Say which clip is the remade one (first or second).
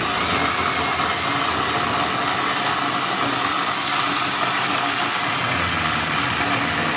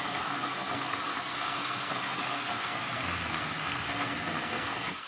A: second